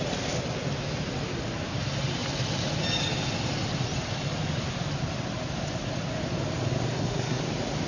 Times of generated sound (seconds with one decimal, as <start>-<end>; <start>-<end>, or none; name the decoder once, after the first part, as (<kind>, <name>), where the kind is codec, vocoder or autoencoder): 6.9-7.4 (codec, SNAC)